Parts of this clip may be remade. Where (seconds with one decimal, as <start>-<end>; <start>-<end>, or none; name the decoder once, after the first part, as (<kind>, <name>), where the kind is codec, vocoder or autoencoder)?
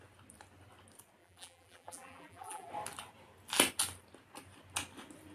1.2-2.7 (vocoder, BigVGAN v2)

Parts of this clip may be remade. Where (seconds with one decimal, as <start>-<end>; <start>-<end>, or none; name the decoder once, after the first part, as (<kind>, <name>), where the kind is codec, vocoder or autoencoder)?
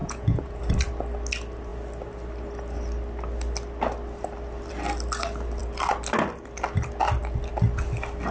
0.0-0.6 (vocoder, Vocos)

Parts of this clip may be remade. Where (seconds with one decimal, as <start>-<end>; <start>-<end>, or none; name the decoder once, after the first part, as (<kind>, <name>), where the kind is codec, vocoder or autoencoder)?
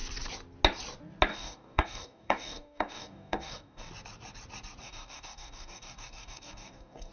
1.3-3.9 (codec, DAC); 4.8-7.1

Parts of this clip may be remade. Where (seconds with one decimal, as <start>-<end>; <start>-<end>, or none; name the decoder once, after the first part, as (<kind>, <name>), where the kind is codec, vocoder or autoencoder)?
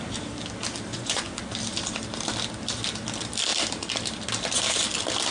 0.9-1.4 (vocoder, Vocos)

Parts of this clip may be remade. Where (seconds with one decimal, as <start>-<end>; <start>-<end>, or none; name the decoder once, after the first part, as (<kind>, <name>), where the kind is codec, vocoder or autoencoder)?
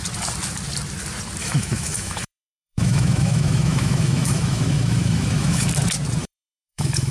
1.4-5.7 (autoencoder, DAC-VAE); 6.2-7.1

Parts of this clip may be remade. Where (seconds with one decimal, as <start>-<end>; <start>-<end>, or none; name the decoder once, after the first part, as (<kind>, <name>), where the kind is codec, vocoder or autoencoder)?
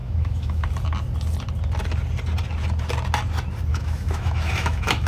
0.0-0.7 (autoencoder, DAC-VAE); 3.7-5.1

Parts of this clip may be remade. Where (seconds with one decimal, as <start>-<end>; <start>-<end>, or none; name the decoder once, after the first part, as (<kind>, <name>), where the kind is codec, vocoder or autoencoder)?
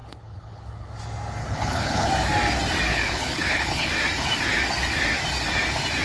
0.0-0.9 (codec, HILCodec); 1.4-2.1; 2.9-3.9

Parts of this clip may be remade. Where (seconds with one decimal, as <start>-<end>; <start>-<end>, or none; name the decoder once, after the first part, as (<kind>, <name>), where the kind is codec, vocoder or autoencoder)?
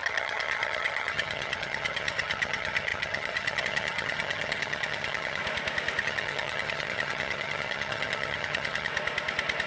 0.0-5.4 (vocoder, HiFi-GAN); 6.0-8.9